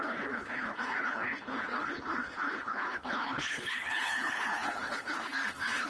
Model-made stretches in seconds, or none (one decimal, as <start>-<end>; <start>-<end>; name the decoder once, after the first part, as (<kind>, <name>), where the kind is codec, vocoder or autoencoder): 0.0-5.9 (codec, HILCodec)